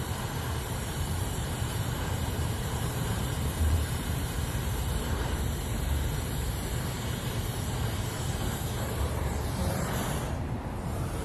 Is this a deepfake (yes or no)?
yes